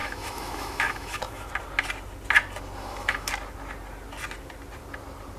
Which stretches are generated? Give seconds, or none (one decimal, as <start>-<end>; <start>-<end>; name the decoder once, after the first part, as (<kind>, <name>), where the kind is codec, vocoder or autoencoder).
0.0-1.5 (autoencoder, DAC-VAE); 2.8-3.3